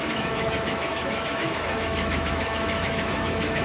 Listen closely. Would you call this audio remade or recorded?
remade